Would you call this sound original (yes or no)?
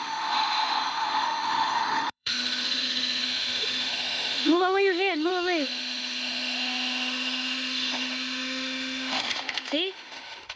no